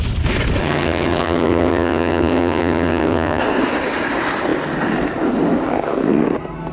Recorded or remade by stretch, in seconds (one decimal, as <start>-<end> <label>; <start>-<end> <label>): 0.0-0.6 recorded; 0.6-3.4 remade; 3.4-6.7 recorded